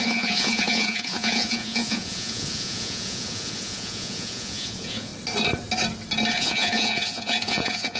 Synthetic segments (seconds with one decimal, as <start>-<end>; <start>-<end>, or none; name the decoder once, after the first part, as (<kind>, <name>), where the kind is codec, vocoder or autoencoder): 0.0-5.1 (vocoder, Vocos); 6.3-8.0